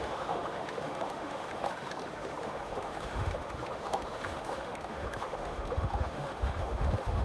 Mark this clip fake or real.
fake